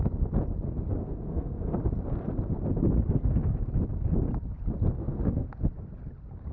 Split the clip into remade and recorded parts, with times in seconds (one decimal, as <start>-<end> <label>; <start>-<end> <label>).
0.0-1.0 recorded; 1.0-1.8 remade; 1.8-5.0 recorded; 5.0-5.6 remade; 5.6-6.5 recorded